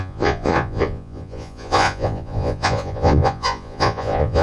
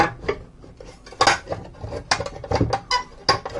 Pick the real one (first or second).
second